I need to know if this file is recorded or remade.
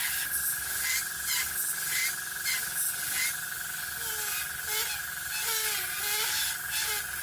recorded